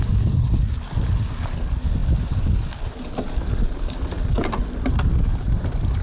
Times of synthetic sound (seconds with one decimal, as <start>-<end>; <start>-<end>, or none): none